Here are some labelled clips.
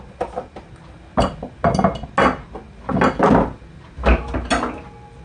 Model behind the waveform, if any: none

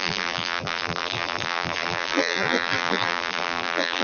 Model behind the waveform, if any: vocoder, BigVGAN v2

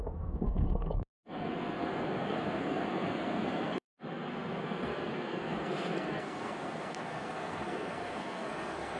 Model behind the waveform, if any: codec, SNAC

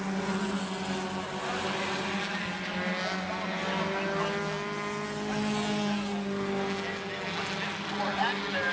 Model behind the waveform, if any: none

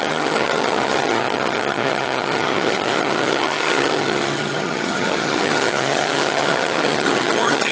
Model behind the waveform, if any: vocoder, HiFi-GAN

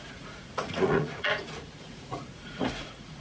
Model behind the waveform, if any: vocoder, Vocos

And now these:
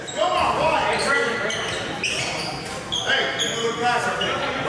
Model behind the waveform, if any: none